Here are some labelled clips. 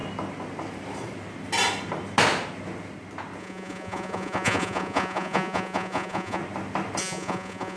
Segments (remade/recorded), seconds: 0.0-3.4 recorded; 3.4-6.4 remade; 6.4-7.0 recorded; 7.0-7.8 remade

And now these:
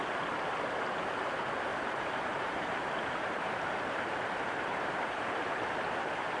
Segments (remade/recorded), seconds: 0.0-1.7 recorded; 1.7-5.5 remade; 5.5-6.4 recorded

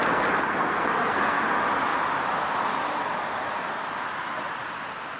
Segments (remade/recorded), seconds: 0.0-1.4 remade; 1.4-5.2 recorded

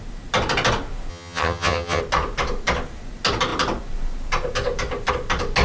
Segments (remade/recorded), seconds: 0.0-1.1 recorded; 1.1-2.0 remade; 2.0-5.6 recorded

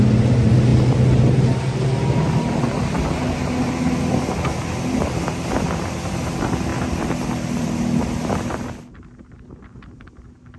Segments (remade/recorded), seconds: 0.0-10.6 recorded

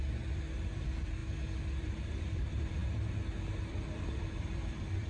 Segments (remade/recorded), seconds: 0.0-1.2 remade; 1.2-1.8 recorded; 1.8-2.8 remade; 2.8-3.7 recorded; 3.7-5.1 remade